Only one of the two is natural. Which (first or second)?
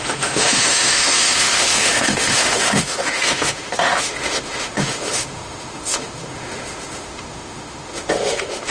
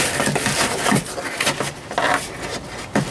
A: second